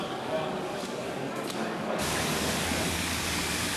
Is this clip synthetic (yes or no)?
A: yes